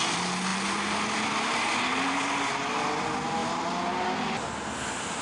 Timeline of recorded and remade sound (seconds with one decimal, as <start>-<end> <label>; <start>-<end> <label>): 0.0-5.2 recorded